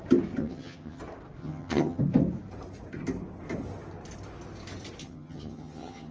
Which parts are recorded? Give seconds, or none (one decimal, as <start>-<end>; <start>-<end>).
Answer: 0.0-0.4; 1.0-1.4; 2.0-5.0